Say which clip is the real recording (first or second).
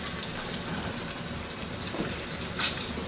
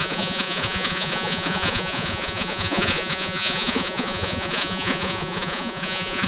first